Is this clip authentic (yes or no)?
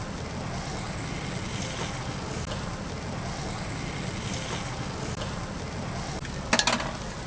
yes